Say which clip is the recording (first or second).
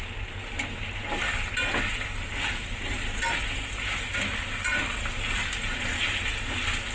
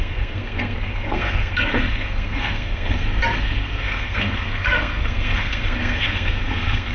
first